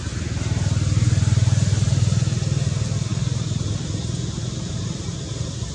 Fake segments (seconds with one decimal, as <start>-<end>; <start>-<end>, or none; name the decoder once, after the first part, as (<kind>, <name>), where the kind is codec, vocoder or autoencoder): none